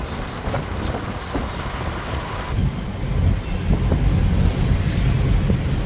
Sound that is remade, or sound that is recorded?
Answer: recorded